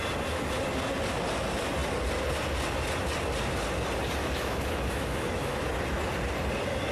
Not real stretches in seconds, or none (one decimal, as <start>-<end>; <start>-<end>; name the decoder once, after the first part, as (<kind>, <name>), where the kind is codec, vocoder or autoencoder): 4.2-5.7 (autoencoder, DAC-VAE)